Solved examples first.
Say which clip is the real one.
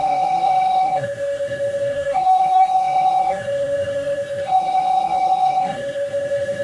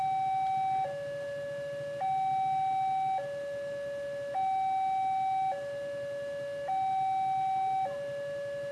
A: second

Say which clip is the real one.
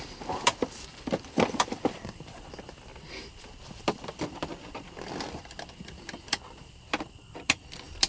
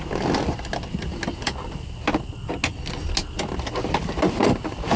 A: second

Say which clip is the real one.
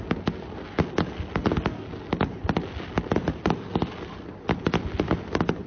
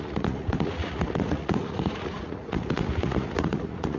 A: first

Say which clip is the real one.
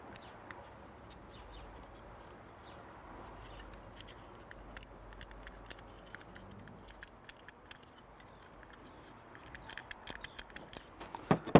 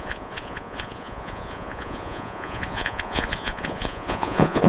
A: first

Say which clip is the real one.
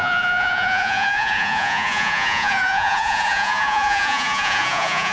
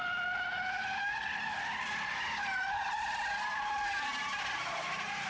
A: second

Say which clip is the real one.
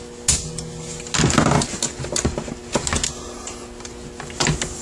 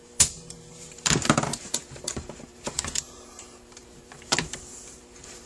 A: first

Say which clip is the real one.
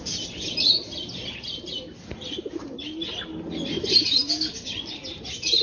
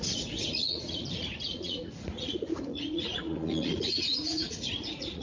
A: first